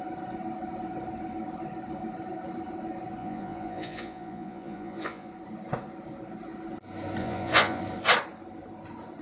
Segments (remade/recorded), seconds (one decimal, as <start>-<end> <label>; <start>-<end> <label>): 0.0-3.2 recorded; 3.2-5.3 remade; 5.3-7.2 recorded; 7.2-7.8 remade; 7.8-9.2 recorded